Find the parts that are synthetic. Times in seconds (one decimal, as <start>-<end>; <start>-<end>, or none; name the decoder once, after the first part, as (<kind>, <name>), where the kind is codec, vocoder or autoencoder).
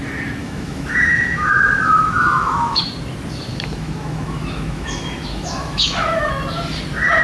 0.4-2.8 (autoencoder, DAC-VAE); 3.5-6.3